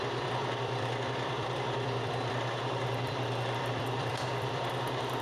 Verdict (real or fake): fake